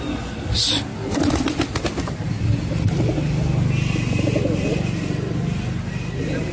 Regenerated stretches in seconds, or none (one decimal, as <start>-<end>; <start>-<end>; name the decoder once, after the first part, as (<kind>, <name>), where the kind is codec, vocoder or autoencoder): none